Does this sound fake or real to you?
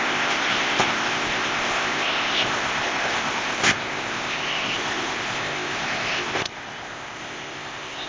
fake